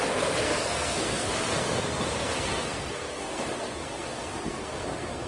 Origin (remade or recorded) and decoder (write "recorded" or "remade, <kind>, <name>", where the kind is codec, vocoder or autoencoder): remade, codec, SNAC